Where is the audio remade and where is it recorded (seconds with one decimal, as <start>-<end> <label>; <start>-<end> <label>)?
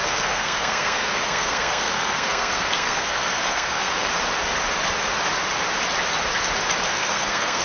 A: 0.0-4.1 remade; 4.1-6.8 recorded; 6.8-7.6 remade